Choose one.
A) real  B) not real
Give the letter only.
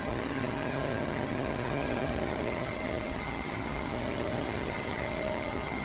B